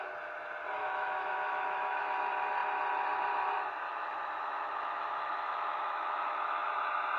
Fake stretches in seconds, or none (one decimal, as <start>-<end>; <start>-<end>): 0.8-2.0; 3.9-6.7